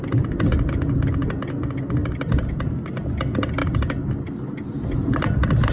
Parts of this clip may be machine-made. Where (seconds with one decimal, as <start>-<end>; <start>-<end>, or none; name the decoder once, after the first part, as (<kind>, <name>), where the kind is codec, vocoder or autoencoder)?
none